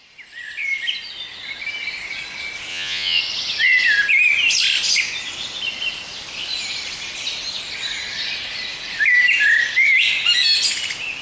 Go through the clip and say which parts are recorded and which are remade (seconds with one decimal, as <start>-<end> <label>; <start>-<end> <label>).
0.0-2.7 recorded; 2.7-3.2 remade; 3.2-11.2 recorded